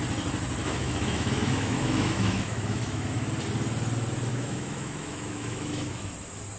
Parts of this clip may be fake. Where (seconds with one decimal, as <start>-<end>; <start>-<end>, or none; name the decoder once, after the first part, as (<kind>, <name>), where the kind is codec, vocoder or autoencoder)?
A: 0.6-3.3 (autoencoder, DAC-VAE); 4.3-6.1